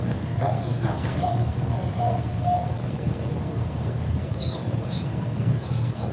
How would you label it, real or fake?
fake